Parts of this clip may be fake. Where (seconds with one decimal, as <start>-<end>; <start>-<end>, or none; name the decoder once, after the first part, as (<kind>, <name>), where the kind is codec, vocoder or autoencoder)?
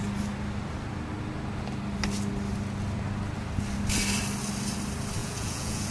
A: 5.2-5.9 (vocoder, Vocos)